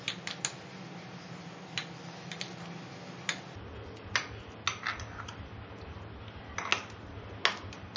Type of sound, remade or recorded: recorded